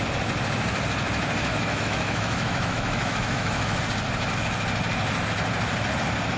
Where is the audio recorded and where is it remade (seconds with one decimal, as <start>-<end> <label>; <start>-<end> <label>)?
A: 0.0-1.5 recorded; 1.5-3.8 remade; 3.8-6.4 recorded